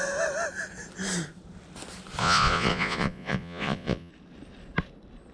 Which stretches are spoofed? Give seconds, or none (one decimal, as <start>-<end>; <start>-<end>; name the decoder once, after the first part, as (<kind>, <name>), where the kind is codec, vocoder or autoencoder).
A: 2.2-4.1 (vocoder, Vocos)